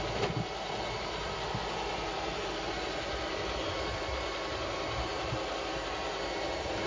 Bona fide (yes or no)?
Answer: yes